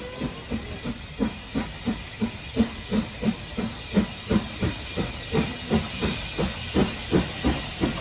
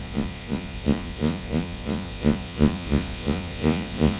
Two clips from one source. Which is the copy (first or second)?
second